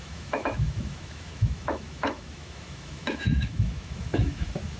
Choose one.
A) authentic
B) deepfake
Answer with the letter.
B